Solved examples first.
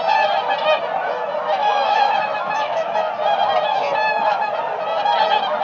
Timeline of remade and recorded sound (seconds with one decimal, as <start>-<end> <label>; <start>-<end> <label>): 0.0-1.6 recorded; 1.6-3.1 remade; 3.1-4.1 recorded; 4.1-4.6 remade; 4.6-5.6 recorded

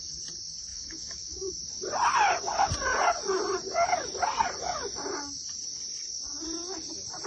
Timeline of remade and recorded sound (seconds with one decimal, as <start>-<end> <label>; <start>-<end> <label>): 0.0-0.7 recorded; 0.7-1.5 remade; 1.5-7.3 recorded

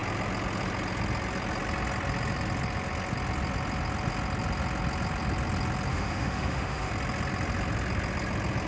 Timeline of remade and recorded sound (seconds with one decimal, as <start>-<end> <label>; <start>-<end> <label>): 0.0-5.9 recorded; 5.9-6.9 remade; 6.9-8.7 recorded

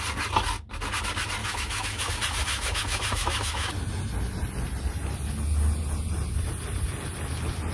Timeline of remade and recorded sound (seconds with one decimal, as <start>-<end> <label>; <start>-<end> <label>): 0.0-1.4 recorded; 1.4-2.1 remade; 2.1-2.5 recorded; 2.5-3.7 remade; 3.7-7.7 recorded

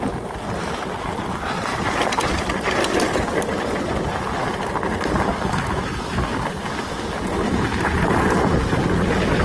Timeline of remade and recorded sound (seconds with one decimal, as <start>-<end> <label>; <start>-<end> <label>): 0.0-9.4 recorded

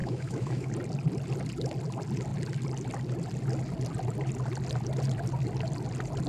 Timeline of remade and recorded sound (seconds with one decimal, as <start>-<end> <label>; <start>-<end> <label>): 0.0-0.7 remade; 0.7-6.3 recorded

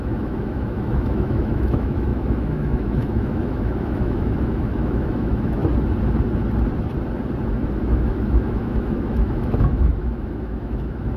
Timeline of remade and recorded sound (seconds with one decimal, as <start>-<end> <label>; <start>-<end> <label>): 0.0-5.6 remade; 5.6-7.8 recorded; 7.8-11.2 remade

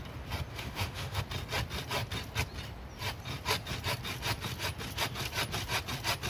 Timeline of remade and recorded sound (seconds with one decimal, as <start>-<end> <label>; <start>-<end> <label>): 0.0-0.5 recorded; 0.5-1.2 remade; 1.2-6.3 recorded